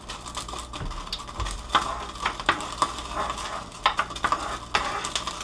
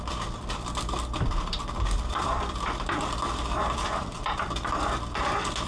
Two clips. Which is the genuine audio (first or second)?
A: first